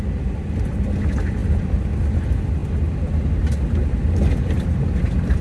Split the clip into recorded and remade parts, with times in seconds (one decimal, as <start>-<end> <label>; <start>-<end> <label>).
0.0-5.4 recorded